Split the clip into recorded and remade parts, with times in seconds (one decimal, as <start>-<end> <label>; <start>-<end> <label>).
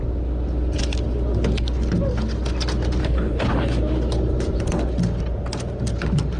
0.0-3.0 recorded; 3.0-3.8 remade; 3.8-6.4 recorded